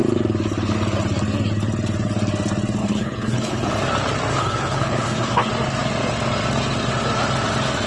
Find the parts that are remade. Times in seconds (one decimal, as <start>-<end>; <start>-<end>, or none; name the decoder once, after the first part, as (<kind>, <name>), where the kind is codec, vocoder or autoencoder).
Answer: 2.8-3.7 (codec, HILCodec); 4.3-5.5